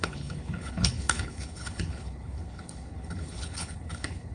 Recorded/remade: remade